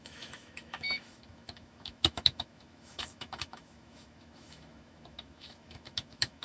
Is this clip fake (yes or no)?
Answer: yes